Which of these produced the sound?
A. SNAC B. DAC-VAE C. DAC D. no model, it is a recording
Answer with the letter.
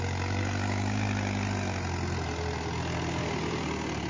D